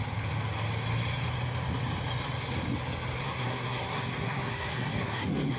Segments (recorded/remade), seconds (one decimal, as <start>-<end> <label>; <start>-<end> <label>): 0.0-3.2 recorded; 3.2-5.6 remade